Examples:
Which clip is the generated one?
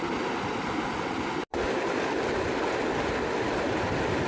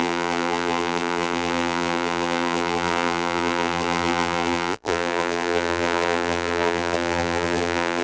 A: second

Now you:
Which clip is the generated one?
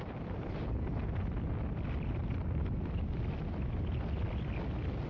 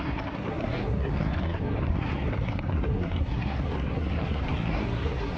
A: second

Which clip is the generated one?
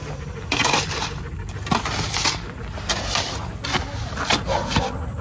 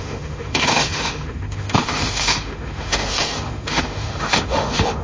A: second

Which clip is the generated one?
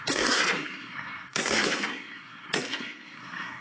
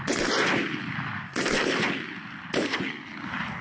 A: first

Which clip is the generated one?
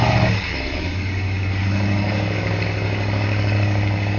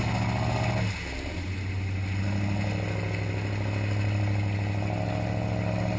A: first